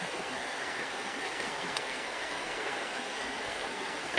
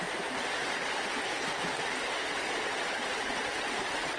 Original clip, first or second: second